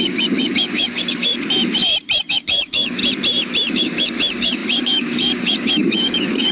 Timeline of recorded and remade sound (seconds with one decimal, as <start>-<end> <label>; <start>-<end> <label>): 0.0-1.3 remade; 1.3-2.3 recorded; 2.3-3.0 remade; 3.0-3.7 recorded; 3.7-6.5 remade